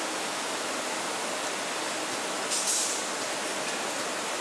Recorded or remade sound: recorded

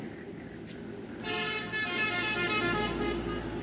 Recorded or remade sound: recorded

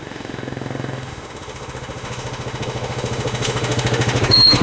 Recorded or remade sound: remade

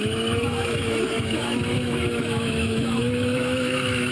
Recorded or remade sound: remade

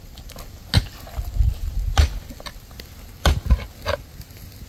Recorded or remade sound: recorded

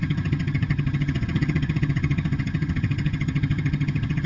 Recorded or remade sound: remade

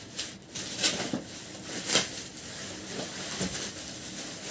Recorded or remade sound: recorded